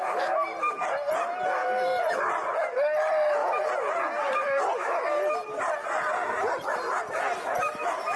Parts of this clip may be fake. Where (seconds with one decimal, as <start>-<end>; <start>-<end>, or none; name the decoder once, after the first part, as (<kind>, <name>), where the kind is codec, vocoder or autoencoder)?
1.6-2.1 (vocoder, BigVGAN v2); 3.4-4.6; 6.2-7.0